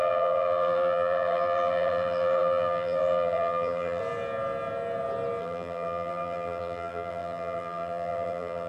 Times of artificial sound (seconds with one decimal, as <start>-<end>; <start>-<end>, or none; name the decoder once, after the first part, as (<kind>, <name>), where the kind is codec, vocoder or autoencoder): 0.0-4.0 (vocoder, BigVGAN v2); 5.4-8.7